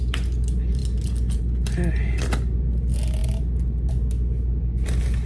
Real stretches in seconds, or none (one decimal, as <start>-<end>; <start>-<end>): 0.0-5.3